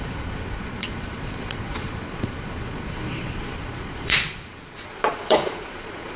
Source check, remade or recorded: remade